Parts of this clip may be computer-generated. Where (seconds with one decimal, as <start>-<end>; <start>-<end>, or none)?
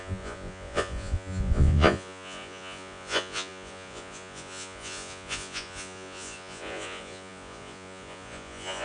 0.0-8.8